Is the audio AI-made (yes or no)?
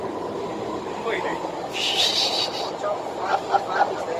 no